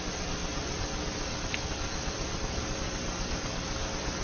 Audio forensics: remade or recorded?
remade